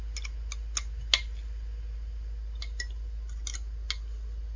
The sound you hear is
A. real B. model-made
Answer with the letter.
A